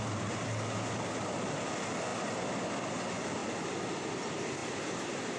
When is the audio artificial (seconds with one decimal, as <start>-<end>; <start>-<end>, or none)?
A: none

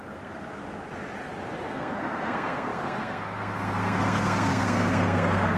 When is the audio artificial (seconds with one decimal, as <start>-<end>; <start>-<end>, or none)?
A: 0.0-0.6; 1.7-5.6

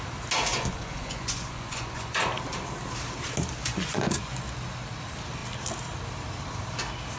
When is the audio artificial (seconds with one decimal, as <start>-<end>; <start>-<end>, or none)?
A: 0.5-2.2; 3.6-4.4

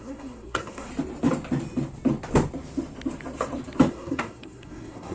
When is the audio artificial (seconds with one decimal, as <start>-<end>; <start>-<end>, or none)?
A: 0.0-0.9; 3.9-5.1

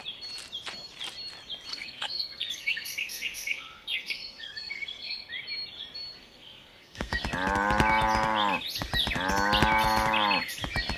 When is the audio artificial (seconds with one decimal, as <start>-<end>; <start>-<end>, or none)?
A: 1.7-5.3; 6.2-7.2